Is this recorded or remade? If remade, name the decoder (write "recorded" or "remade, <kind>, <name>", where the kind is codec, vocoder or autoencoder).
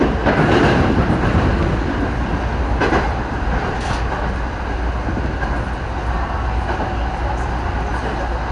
recorded